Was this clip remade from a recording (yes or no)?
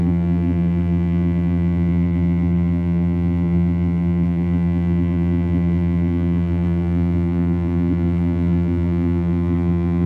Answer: yes